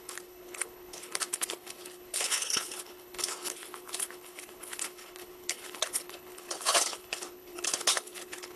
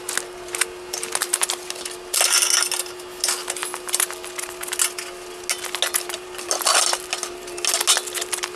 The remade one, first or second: first